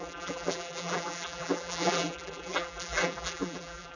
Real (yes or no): no